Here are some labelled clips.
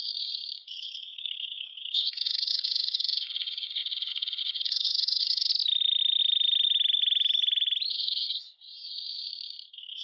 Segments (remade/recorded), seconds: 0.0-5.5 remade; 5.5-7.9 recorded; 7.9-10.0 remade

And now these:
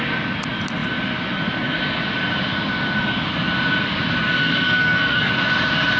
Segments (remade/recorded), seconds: 0.0-4.4 recorded; 4.4-5.3 remade; 5.3-6.0 recorded

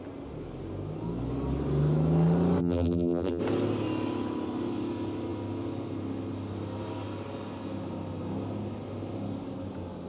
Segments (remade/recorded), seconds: 0.0-2.6 recorded; 2.6-3.4 remade; 3.4-10.1 recorded